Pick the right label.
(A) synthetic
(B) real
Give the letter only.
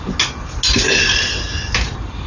B